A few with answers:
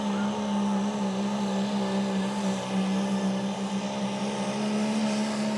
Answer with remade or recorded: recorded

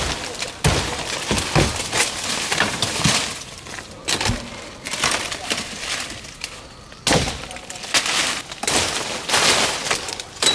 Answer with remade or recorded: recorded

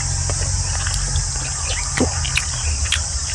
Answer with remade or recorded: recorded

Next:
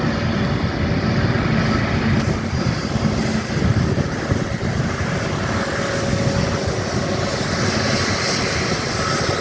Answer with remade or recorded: recorded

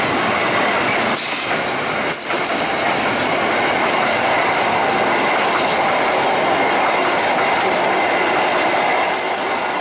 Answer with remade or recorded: recorded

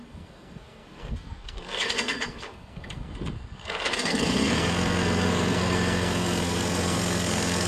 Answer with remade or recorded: remade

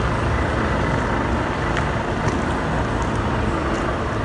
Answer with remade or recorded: recorded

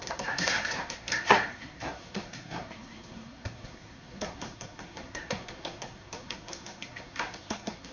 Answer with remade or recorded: remade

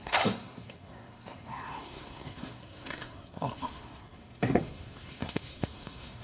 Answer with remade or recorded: remade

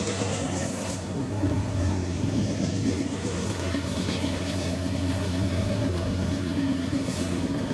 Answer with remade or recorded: remade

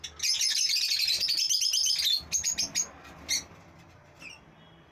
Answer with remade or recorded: recorded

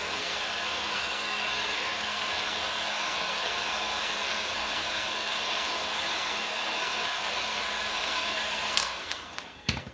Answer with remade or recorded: remade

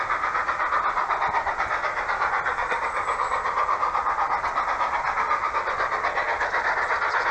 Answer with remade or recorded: recorded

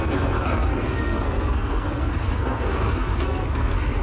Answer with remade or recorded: remade